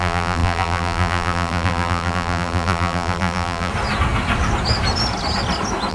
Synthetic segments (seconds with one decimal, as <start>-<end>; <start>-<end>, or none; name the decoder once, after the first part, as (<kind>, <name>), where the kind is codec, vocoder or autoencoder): 0.0-3.7 (vocoder, BigVGAN v2)